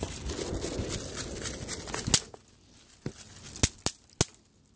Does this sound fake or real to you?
real